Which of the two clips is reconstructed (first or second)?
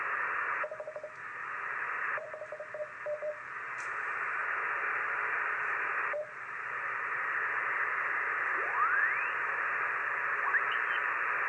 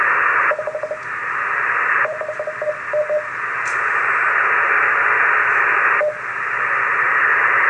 first